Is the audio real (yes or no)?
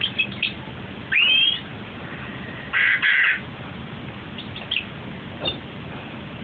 yes